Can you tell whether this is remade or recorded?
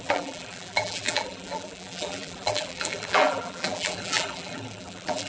remade